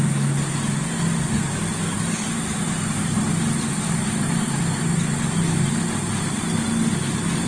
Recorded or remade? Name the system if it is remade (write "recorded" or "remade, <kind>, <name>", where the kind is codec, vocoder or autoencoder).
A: recorded